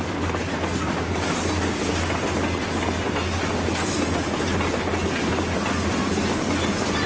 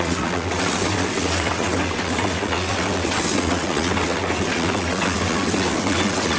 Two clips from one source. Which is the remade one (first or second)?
second